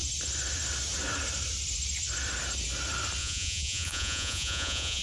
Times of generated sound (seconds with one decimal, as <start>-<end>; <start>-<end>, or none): 3.2-5.0